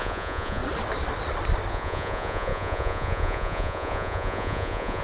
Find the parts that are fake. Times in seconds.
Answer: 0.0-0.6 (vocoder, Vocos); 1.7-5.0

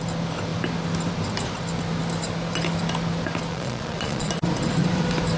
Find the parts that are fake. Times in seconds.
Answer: 3.5-4.3 (vocoder, Vocos)